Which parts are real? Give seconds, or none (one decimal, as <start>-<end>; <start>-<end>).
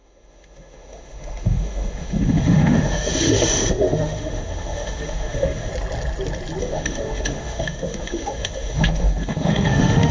5.7-6.6